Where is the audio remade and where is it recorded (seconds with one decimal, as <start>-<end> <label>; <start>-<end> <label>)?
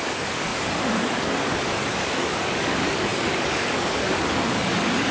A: 0.0-5.1 remade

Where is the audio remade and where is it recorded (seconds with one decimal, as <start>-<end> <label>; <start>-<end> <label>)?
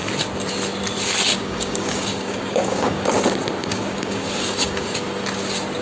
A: 0.0-1.3 recorded; 1.3-3.1 remade; 3.1-3.6 recorded; 3.6-5.0 remade; 5.0-5.8 recorded